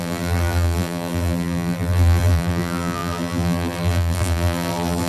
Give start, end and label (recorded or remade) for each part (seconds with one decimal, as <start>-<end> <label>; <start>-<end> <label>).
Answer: 0.0-5.1 remade